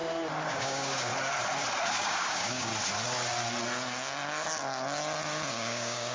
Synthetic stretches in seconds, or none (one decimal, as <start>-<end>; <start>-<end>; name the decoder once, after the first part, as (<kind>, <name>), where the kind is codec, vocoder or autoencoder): 0.5-1.1 (codec, DAC); 1.9-2.7; 5.5-6.1